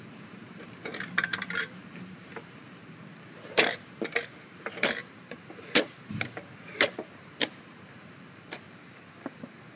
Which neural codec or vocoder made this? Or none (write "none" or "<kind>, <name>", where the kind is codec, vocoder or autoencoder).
vocoder, BigVGAN v2